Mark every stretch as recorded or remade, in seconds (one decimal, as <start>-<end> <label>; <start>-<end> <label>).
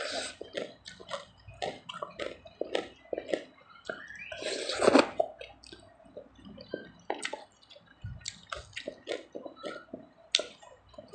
0.0-11.1 recorded